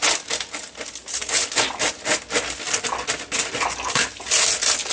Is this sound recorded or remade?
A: recorded